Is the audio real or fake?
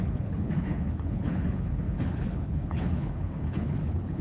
fake